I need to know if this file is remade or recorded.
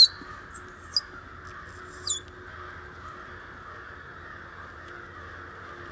recorded